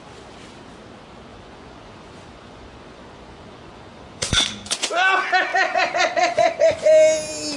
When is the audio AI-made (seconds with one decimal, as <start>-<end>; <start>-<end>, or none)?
1.3-4.9; 5.5-6.9